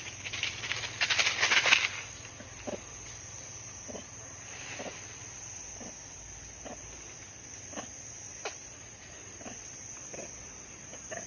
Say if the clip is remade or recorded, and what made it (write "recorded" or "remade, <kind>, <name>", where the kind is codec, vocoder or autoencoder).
recorded